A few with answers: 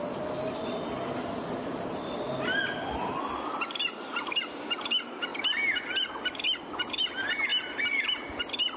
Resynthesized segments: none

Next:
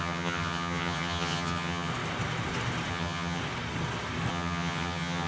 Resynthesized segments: 0.0-1.9 (vocoder, HiFi-GAN); 2.9-3.4; 4.3-5.3